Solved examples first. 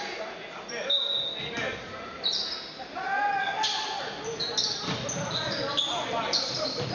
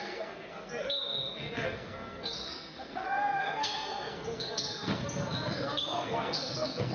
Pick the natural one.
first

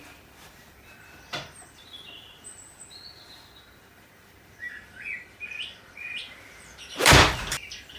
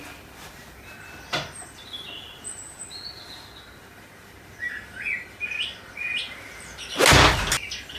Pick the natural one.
second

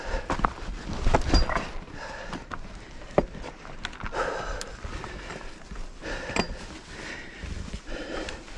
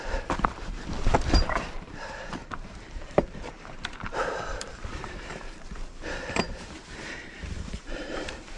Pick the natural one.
first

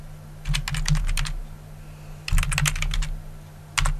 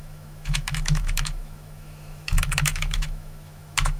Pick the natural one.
first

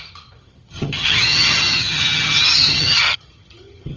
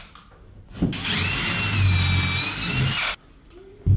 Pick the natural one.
second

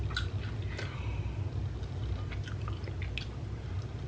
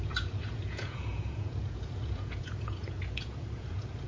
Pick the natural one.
first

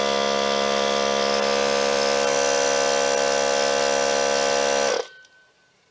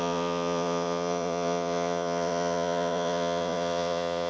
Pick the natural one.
first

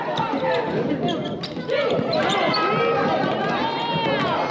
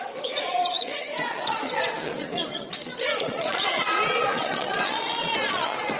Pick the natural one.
first